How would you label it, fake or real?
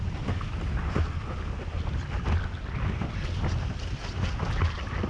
real